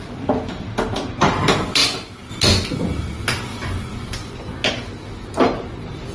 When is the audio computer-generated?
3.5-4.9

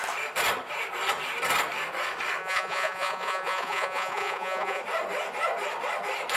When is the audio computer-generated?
2.4-4.8

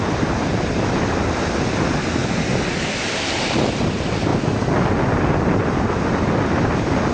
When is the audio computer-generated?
none

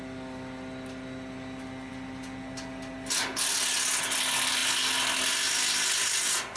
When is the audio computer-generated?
none

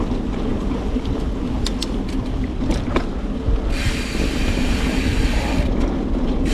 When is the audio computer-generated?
none

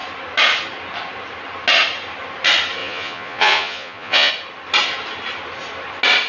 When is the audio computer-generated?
2.8-4.3